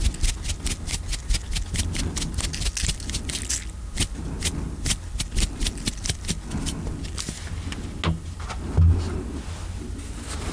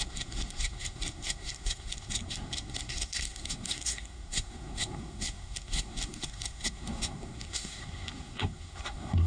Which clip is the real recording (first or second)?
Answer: first